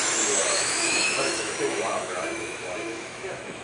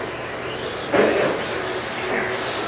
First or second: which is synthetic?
first